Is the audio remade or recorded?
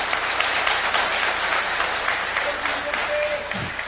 recorded